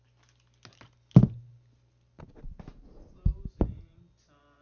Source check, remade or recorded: recorded